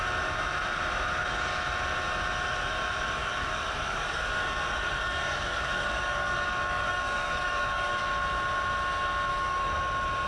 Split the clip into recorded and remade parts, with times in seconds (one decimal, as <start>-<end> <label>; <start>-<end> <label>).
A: 0.0-3.2 recorded; 3.2-8.0 remade; 8.0-9.3 recorded; 9.3-9.8 remade; 9.8-10.3 recorded